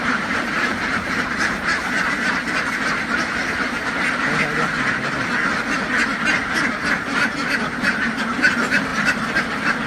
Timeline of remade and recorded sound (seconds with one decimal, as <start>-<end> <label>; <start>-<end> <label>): 0.0-1.7 remade; 1.7-6.4 recorded; 6.4-9.9 remade